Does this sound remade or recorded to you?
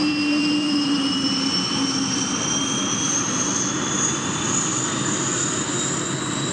recorded